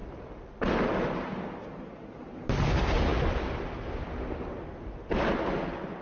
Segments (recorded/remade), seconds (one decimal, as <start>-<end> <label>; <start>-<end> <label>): 0.0-6.0 recorded